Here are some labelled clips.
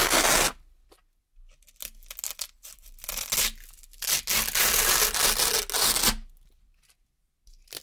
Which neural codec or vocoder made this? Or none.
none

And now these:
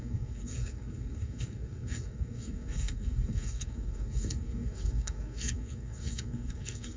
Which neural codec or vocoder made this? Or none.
codec, SNAC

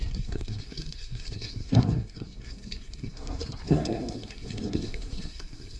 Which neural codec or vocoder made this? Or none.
codec, SNAC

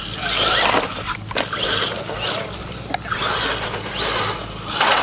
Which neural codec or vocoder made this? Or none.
none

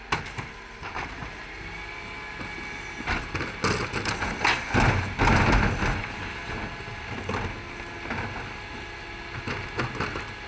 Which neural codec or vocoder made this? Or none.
none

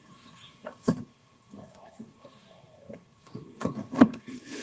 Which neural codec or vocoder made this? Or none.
codec, SNAC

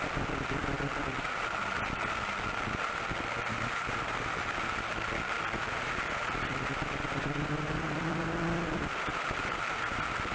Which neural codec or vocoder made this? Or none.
vocoder, BigVGAN v2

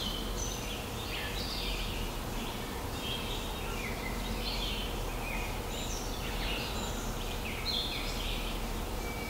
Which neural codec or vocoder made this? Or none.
none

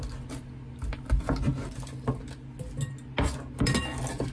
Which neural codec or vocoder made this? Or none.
none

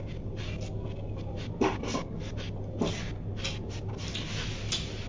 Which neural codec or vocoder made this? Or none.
none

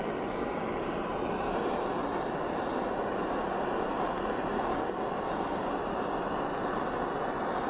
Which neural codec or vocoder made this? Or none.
none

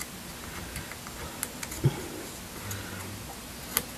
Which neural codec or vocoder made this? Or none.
none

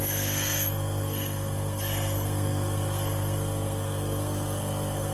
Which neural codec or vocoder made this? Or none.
codec, SNAC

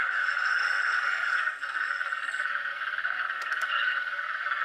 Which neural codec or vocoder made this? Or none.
codec, SNAC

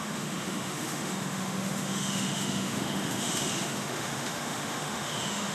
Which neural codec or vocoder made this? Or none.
autoencoder, DAC-VAE